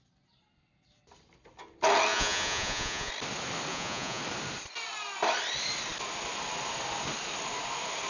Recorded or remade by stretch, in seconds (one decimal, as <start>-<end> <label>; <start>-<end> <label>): 0.0-2.1 recorded; 2.1-3.1 remade; 3.1-3.7 recorded; 3.7-4.2 remade; 4.2-8.1 recorded